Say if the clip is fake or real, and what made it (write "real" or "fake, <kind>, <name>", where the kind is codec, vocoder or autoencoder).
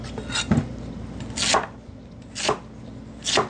real